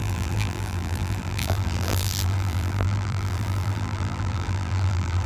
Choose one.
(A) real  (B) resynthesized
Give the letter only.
B